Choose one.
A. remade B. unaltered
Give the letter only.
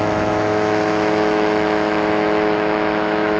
A